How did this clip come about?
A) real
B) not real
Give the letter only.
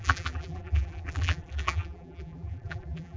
B